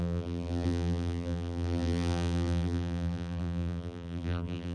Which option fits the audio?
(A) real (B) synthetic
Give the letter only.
B